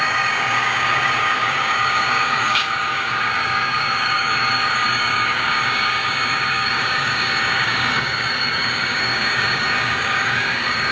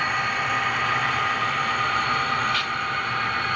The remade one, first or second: first